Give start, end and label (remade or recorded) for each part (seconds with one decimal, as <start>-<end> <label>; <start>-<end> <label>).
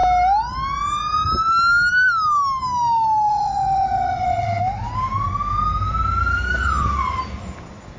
0.0-3.3 recorded; 3.3-4.6 remade; 4.6-8.0 recorded